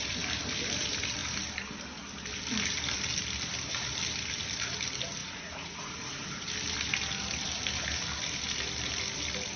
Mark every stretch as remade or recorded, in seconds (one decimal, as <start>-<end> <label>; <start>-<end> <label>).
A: 0.0-5.2 recorded; 5.2-6.4 remade; 6.4-9.6 recorded

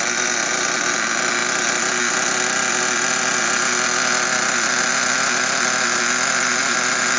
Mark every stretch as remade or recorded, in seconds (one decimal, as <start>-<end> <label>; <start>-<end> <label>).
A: 0.0-7.2 recorded

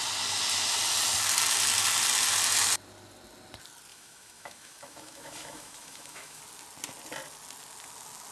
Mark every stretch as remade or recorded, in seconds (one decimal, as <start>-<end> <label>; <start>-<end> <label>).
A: 0.0-3.9 recorded; 3.9-6.4 remade; 6.4-8.3 recorded

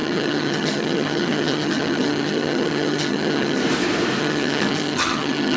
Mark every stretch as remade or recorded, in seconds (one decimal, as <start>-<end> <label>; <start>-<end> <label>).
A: 0.0-3.6 remade; 3.6-4.2 recorded; 4.2-5.6 remade

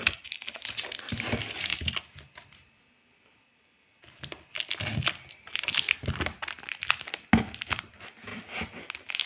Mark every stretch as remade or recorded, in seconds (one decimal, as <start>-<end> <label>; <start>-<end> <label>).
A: 0.0-9.3 recorded

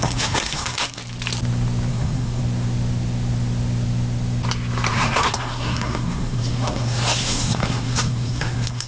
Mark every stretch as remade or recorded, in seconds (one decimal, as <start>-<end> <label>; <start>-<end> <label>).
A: 0.0-1.0 remade; 1.0-1.9 recorded; 1.9-2.4 remade; 2.4-4.9 recorded; 4.9-8.9 remade

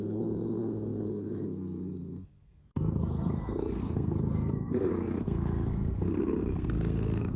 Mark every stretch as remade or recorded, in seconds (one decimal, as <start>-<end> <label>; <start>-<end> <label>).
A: 0.0-7.4 remade